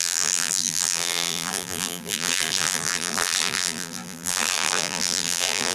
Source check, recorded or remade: remade